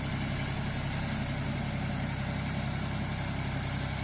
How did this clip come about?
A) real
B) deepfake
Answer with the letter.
A